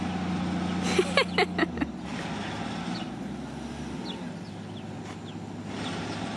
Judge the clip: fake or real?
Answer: real